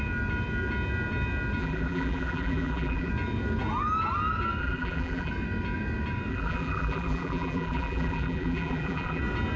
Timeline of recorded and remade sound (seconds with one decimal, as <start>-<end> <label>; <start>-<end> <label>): 0.0-1.6 recorded; 1.6-3.1 remade; 3.1-4.6 recorded; 4.6-5.3 remade; 5.3-6.3 recorded; 6.3-9.2 remade; 9.2-9.6 recorded